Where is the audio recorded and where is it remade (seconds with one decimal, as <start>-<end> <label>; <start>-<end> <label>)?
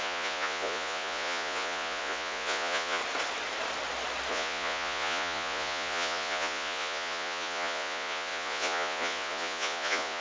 0.0-3.0 remade; 3.0-4.3 recorded; 4.3-10.2 remade